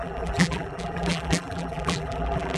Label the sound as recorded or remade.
remade